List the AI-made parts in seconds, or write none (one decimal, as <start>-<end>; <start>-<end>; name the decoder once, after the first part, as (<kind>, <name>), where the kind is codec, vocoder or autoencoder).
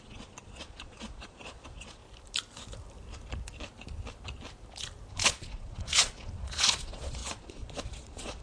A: 0.0-2.0 (vocoder, Vocos); 5.1-8.4